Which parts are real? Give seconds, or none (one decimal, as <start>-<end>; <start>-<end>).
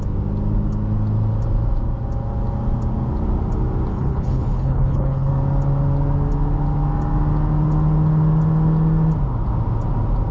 0.0-3.9; 5.3-10.3